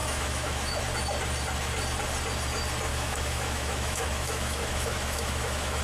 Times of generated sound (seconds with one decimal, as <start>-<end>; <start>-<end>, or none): 0.0-0.8; 2.9-5.8